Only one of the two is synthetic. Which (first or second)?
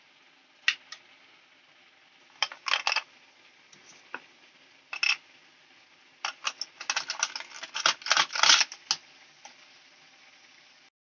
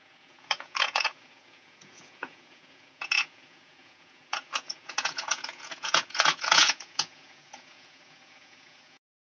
second